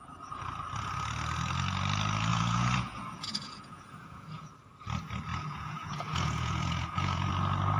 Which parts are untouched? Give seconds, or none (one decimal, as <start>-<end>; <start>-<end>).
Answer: 0.0-2.3; 4.5-5.3; 7.3-7.8